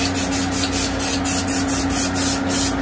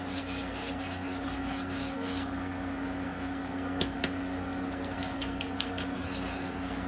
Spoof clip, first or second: second